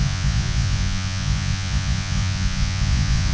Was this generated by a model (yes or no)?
yes